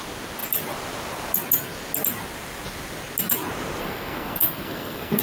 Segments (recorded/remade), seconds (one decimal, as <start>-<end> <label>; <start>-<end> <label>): 0.0-3.8 recorded; 3.8-5.2 remade